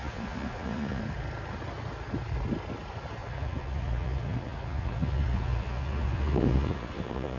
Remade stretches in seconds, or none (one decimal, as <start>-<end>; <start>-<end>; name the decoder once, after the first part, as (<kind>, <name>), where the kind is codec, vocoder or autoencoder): 0.0-1.0 (vocoder, Vocos); 3.2-7.4